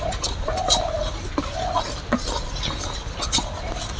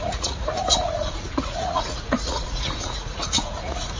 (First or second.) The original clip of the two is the first